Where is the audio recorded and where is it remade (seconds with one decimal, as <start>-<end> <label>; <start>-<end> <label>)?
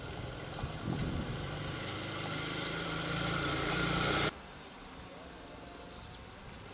0.0-1.3 recorded; 1.3-4.7 remade; 4.7-6.7 recorded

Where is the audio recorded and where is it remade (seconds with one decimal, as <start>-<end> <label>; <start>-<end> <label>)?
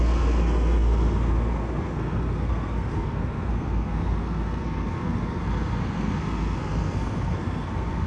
0.0-8.1 remade